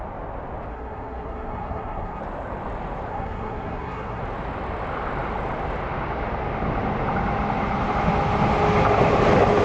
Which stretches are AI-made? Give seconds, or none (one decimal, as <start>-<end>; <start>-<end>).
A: 0.7-2.2; 3.1-4.2